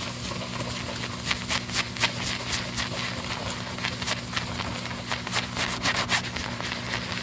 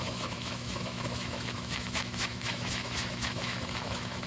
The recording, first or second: first